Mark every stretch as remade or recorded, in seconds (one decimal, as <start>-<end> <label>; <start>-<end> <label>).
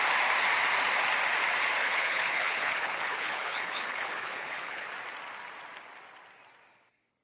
0.0-1.8 recorded; 1.8-4.9 remade; 4.9-7.2 recorded